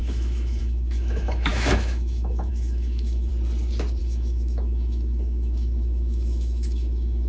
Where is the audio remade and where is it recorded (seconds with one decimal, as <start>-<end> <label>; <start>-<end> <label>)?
0.0-3.3 remade; 3.3-4.0 recorded; 4.0-7.3 remade